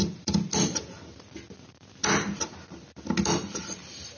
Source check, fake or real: real